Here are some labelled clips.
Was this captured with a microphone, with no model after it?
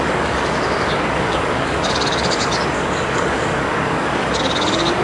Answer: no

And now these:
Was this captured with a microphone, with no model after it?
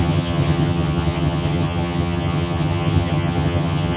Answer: no